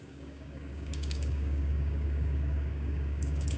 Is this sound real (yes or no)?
no